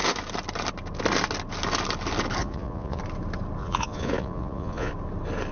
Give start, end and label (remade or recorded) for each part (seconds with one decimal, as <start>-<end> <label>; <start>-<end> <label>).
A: 0.0-2.4 recorded; 2.4-3.0 remade; 3.0-3.6 recorded; 3.6-4.9 remade; 4.9-5.5 recorded